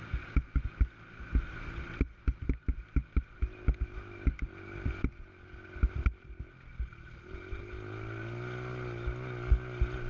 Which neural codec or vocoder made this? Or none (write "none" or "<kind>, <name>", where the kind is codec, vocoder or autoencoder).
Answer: none